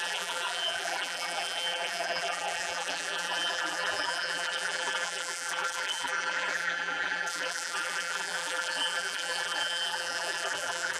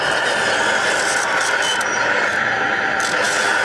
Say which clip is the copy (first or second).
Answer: first